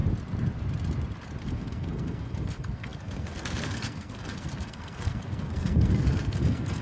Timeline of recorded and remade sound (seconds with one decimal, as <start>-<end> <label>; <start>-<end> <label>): 0.0-1.4 recorded; 1.4-6.8 remade